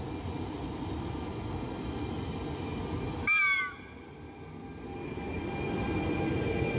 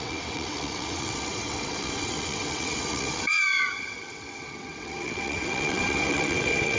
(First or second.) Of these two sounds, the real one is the first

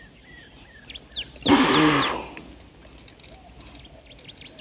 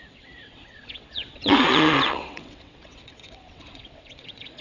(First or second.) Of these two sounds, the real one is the first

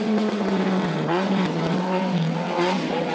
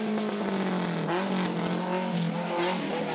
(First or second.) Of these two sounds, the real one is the second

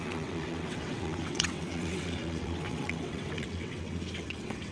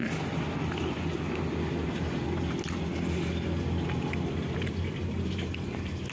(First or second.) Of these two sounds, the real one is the second